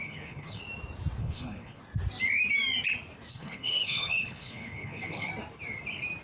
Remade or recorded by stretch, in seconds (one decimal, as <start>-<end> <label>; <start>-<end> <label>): 0.0-0.6 remade; 0.6-1.2 recorded; 1.2-1.8 remade; 1.8-3.3 recorded; 3.3-5.3 remade; 5.3-6.2 recorded